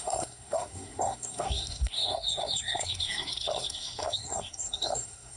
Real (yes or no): no